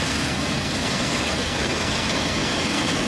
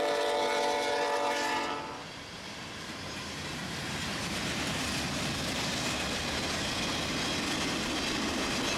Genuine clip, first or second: second